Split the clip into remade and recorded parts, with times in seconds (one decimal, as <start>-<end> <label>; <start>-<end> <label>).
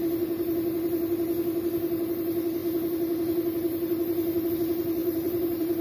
0.0-5.0 recorded; 5.0-5.8 remade